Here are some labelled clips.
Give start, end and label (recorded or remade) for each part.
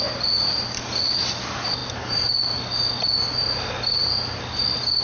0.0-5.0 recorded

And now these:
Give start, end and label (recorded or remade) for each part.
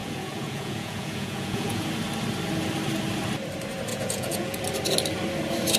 0.0-1.9 remade; 1.9-3.9 recorded; 3.9-4.6 remade; 4.6-5.8 recorded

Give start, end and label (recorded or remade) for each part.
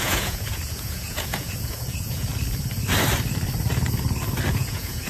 0.0-2.3 remade; 2.3-4.5 recorded; 4.5-5.1 remade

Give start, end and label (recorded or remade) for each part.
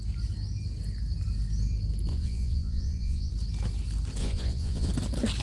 0.0-2.1 recorded; 2.1-3.3 remade; 3.3-4.2 recorded; 4.2-4.9 remade; 4.9-5.4 recorded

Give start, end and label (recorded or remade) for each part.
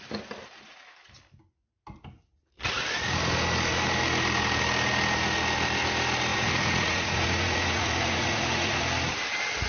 0.0-6.3 recorded; 6.3-8.8 remade; 8.8-9.7 recorded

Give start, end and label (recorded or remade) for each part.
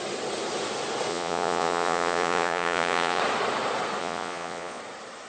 0.0-1.1 recorded; 1.1-3.2 remade; 3.2-4.0 recorded; 4.0-4.8 remade; 4.8-5.3 recorded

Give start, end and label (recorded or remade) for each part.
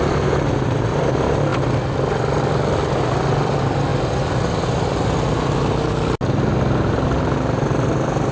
0.0-8.3 recorded